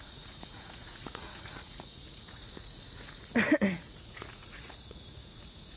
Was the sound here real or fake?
fake